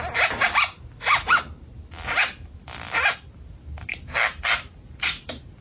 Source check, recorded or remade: recorded